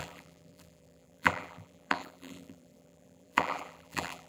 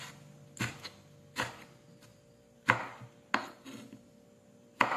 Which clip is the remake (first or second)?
first